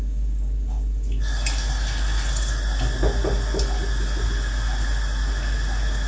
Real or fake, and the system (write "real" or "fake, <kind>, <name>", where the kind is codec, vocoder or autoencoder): real